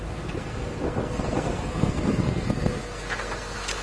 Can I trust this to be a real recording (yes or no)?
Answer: no